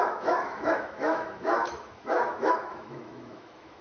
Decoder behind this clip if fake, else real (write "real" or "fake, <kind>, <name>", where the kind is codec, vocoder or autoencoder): fake, autoencoder, DAC-VAE